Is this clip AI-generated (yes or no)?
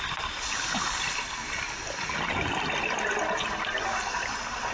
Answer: no